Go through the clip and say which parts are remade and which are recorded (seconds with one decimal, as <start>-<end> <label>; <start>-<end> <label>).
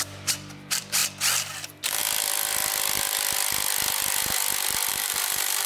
0.0-1.0 remade; 1.0-1.6 recorded; 1.6-2.0 remade; 2.0-4.9 recorded; 4.9-5.7 remade